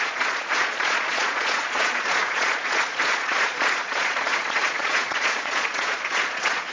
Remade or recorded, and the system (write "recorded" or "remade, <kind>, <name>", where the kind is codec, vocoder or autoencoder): remade, vocoder, Vocos